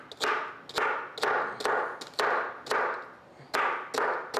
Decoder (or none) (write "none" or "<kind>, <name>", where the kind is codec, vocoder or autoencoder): none